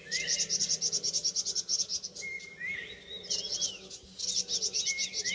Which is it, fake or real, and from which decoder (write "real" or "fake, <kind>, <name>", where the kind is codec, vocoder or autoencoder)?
real